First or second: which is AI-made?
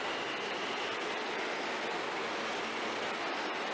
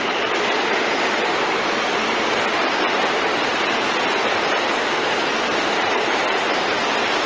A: second